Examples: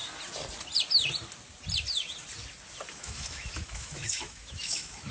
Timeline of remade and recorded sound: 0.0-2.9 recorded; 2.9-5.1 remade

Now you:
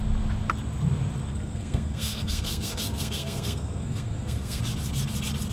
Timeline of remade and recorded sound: 0.0-1.3 recorded; 1.3-4.6 remade; 4.6-5.5 recorded

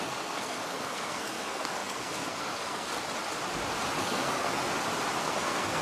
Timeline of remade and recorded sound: 0.0-2.9 remade; 2.9-4.0 recorded; 4.0-4.6 remade; 4.6-5.2 recorded; 5.2-5.8 remade

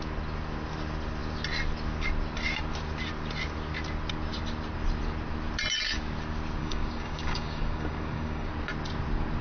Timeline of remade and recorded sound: 0.0-6.6 recorded; 6.6-8.5 remade; 8.5-9.4 recorded

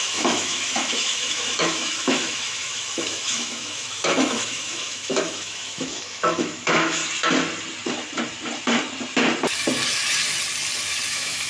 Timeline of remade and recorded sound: 0.0-7.0 remade; 7.0-11.1 recorded; 11.1-11.5 remade